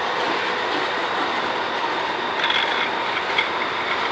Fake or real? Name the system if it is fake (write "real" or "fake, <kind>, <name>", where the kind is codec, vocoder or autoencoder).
real